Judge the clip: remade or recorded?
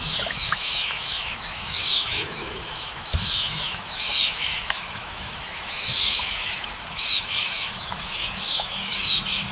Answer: remade